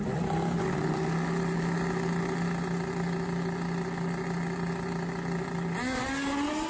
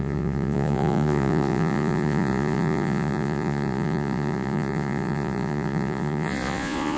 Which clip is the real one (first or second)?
first